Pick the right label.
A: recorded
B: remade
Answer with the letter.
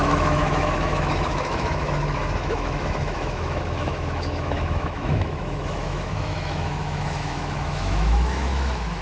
B